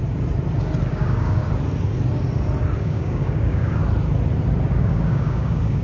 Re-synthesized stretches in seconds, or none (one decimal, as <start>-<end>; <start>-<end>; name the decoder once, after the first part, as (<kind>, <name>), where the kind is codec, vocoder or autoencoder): 0.9-1.4 (codec, DAC); 2.8-3.8; 4.8-5.8